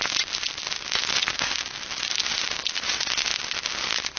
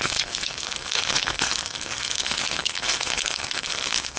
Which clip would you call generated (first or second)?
second